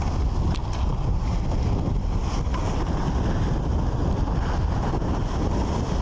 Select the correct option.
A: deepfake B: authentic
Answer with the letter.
B